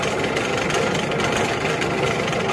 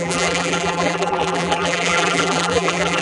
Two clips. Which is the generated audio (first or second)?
second